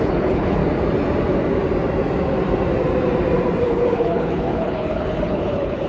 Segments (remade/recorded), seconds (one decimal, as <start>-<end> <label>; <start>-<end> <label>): 0.0-0.6 remade; 0.6-3.6 recorded; 3.6-5.9 remade